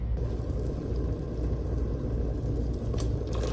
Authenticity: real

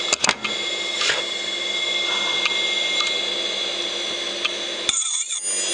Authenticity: real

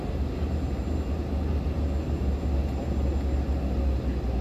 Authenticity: real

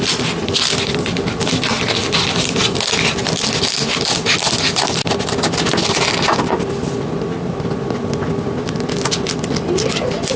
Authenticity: real